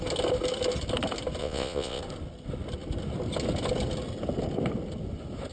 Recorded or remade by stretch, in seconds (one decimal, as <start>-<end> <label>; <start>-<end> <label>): 0.0-1.4 recorded; 1.4-2.0 remade; 2.0-5.5 recorded